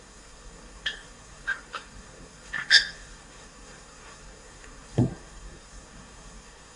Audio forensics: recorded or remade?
remade